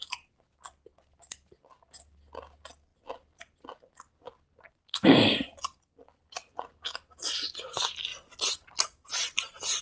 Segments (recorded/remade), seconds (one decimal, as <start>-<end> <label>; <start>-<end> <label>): 0.0-9.8 recorded